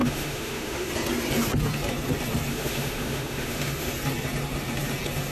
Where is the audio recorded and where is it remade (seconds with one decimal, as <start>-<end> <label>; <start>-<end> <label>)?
0.0-0.9 remade; 0.9-2.5 recorded; 2.5-3.9 remade; 3.9-5.3 recorded